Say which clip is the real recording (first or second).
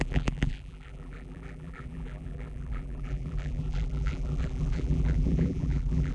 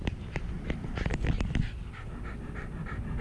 second